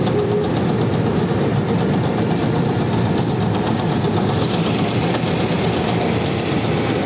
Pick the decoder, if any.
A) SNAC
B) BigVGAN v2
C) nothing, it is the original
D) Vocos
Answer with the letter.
C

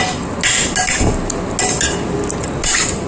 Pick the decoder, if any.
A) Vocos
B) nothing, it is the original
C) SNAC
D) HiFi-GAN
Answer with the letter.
B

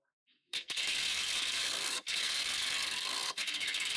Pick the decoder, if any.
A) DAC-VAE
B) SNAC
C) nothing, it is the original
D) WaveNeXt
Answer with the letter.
B